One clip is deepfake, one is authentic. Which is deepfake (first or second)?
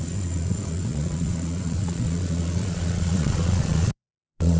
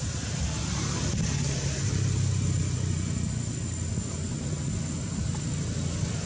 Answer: first